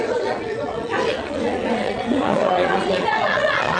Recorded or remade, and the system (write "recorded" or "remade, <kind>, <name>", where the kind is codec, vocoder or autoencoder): remade, vocoder, Vocos